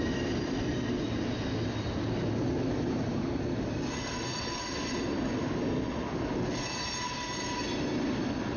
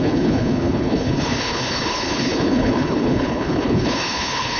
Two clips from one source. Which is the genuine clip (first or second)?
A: first